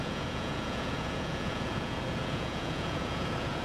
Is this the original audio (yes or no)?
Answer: no